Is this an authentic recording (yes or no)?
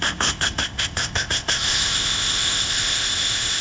no